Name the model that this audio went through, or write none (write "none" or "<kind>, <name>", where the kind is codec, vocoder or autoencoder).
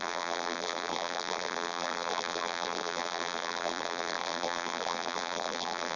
vocoder, BigVGAN v2